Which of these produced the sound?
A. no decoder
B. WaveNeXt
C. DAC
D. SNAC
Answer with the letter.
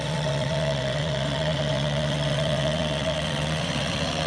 B